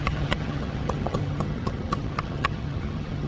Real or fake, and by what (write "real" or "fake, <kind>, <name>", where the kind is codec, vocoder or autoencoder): fake, vocoder, HiFi-GAN